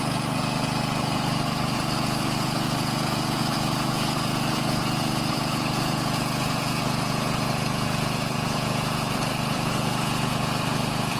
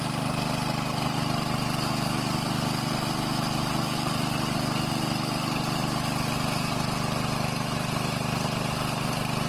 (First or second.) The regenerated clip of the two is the first